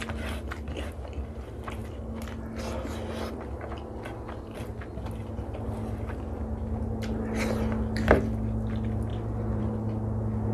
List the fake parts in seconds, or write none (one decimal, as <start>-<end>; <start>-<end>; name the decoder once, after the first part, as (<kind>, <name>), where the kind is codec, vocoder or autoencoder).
none